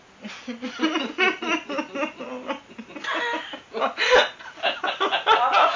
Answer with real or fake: real